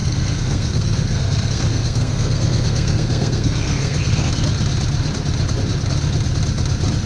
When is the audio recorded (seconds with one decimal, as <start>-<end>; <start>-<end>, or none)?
4.3-7.1